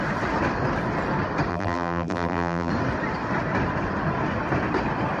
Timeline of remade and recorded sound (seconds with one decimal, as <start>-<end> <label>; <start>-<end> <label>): 0.0-1.5 recorded; 1.5-2.7 remade; 2.7-5.2 recorded